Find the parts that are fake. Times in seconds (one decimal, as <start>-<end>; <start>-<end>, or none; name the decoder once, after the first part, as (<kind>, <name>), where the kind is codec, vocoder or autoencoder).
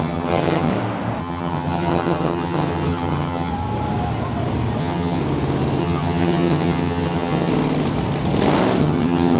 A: 0.0-0.7 (vocoder, HiFi-GAN); 1.2-3.5; 4.8-5.2; 5.8-7.5; 8.8-9.4